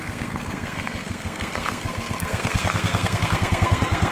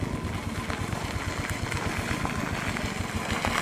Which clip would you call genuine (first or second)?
second